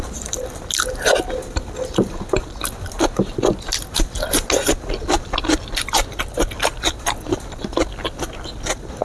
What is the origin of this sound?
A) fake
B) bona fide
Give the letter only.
B